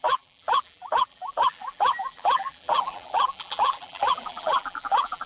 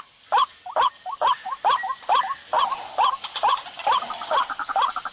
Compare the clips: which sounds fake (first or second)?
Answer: first